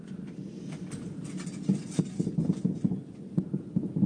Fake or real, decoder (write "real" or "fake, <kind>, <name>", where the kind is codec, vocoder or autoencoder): real